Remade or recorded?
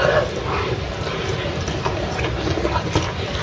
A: recorded